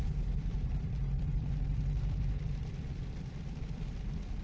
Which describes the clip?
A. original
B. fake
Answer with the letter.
B